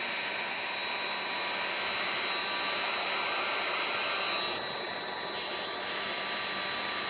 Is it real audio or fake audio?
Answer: real